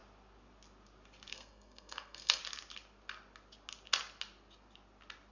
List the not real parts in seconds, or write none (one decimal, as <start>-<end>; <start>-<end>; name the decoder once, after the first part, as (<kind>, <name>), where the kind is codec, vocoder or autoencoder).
1.3-2.4 (codec, SNAC)